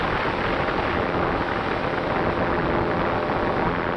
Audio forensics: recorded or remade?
recorded